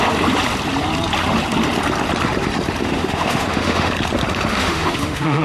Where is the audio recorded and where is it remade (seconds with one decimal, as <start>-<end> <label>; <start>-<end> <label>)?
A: 0.0-2.8 recorded; 2.8-3.9 remade; 3.9-4.5 recorded; 4.5-5.4 remade